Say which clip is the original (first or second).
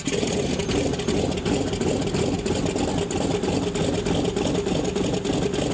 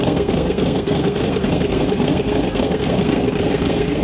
first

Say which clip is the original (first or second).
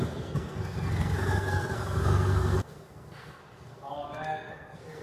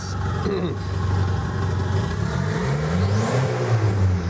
second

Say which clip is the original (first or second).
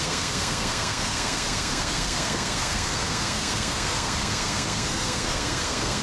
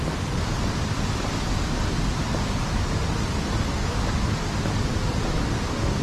second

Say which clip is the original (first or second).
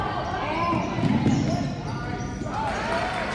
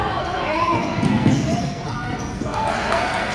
first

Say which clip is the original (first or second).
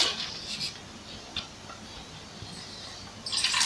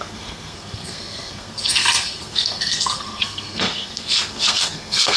first